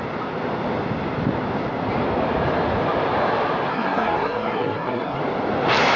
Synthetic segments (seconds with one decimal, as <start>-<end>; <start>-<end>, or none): 3.7-5.2